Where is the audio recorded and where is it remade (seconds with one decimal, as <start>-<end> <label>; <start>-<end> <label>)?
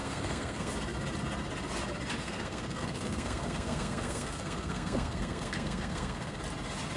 0.0-0.7 remade; 0.7-2.2 recorded; 2.2-6.4 remade; 6.4-7.0 recorded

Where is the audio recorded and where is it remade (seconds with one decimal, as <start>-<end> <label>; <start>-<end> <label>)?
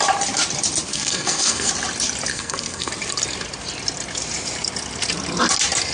0.0-0.9 recorded; 0.9-1.7 remade; 1.7-2.3 recorded; 2.3-2.9 remade; 2.9-5.9 recorded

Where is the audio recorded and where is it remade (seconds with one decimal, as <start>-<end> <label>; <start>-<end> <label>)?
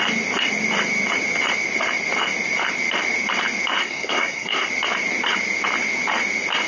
0.0-3.8 recorded; 3.8-4.7 remade; 4.7-6.7 recorded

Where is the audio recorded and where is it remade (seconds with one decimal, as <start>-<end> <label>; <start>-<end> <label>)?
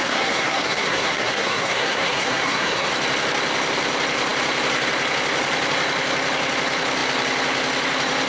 0.0-2.9 remade; 2.9-8.3 recorded